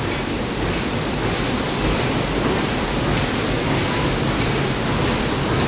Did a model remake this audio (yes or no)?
no